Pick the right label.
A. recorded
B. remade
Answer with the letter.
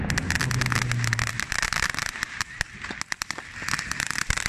A